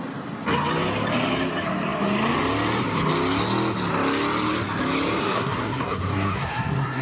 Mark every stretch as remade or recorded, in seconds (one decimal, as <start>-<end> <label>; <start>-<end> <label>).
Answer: 0.0-5.2 recorded; 5.2-7.0 remade